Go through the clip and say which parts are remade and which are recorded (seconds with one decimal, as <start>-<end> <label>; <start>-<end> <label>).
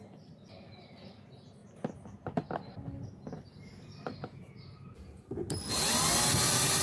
0.0-6.8 recorded